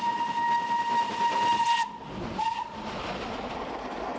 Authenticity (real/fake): real